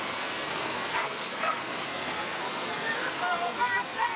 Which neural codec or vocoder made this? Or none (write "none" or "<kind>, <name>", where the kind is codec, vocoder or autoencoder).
codec, SNAC